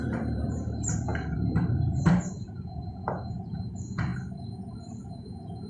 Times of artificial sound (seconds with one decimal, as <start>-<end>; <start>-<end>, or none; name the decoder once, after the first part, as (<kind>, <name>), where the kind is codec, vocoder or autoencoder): 0.0-4.1 (vocoder, BigVGAN v2); 4.8-5.7